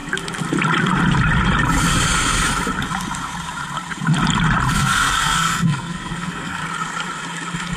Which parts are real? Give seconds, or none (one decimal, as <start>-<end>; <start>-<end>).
0.0-4.7; 6.6-7.8